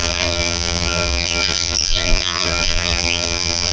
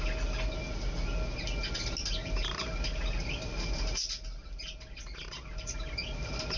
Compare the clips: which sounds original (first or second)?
second